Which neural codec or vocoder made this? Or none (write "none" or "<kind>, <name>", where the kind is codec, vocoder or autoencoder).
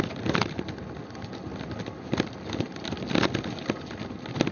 none